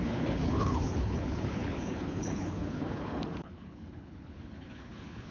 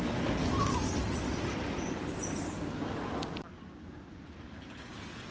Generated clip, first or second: first